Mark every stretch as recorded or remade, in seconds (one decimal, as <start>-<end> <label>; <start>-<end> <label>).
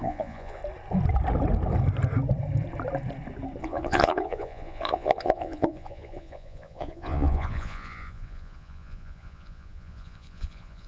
0.0-0.6 remade; 0.6-3.6 recorded; 3.6-10.9 remade